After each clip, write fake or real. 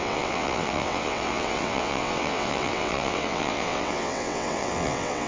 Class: fake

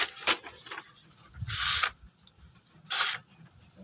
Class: real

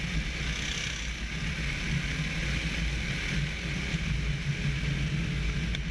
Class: real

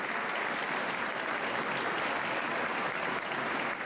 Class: real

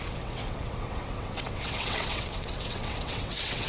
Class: fake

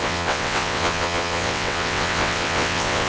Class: fake